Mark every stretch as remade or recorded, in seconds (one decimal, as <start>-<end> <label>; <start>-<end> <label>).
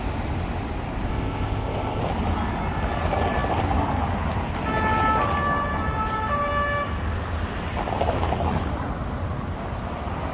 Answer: 0.0-1.1 recorded; 1.1-2.0 remade; 2.0-10.3 recorded